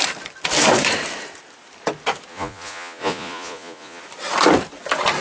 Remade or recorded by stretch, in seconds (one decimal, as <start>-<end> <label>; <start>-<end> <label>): 0.0-2.3 recorded; 2.3-4.0 remade; 4.0-5.2 recorded